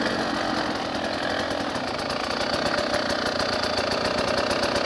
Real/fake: real